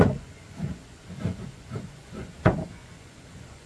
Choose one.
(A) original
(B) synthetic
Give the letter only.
B